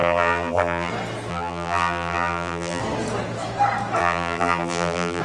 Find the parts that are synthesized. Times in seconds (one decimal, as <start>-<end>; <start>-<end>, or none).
0.0-0.9; 1.3-2.8; 4.0-5.2